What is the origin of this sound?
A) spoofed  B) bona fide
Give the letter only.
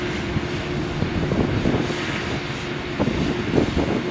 B